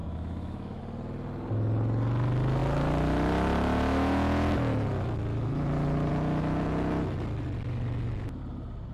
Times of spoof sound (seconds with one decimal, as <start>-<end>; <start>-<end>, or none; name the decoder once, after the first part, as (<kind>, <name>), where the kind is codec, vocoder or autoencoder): 0.0-0.8 (autoencoder, DAC-VAE)